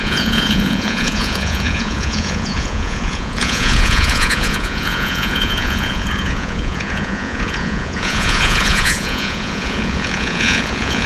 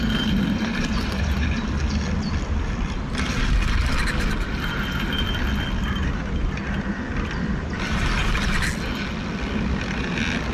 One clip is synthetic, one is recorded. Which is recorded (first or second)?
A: second